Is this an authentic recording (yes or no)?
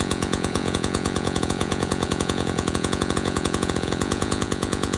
no